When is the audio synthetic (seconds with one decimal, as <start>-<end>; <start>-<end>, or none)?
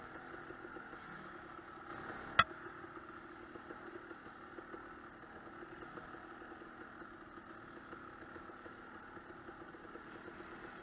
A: none